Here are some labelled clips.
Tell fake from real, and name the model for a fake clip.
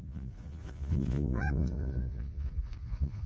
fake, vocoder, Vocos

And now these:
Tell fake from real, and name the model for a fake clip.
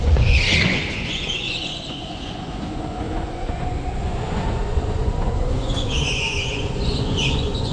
fake, vocoder, Vocos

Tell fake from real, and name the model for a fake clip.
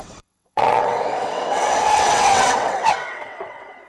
fake, vocoder, WaveNeXt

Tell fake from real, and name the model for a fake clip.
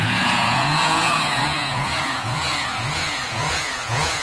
fake, vocoder, Vocos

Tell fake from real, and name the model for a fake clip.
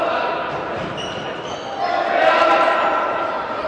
real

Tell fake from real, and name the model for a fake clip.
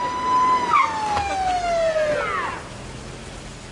real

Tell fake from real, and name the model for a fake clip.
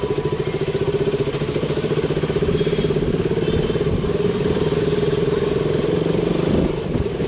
real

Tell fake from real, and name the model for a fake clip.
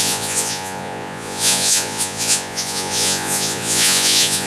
fake, vocoder, Vocos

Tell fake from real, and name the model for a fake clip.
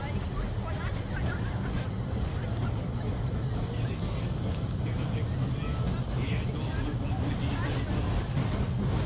real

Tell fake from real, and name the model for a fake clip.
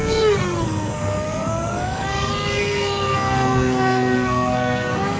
fake, codec, SNAC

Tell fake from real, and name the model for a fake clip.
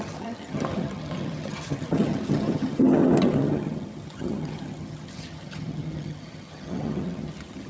fake, vocoder, HiFi-GAN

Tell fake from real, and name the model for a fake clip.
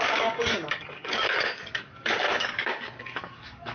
fake, codec, DAC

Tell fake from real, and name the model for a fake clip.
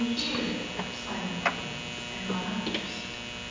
real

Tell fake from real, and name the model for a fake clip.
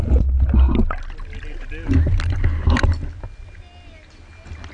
real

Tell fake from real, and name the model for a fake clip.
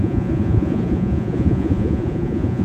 fake, vocoder, Vocos